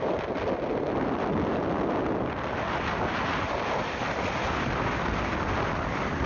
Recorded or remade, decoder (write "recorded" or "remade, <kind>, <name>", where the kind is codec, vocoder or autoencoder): recorded